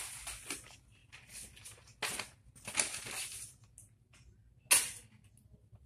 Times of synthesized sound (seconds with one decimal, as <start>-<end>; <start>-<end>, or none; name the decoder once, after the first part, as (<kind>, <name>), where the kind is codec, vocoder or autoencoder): none